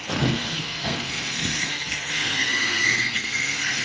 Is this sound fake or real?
fake